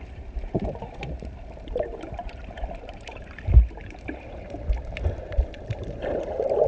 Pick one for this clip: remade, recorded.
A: remade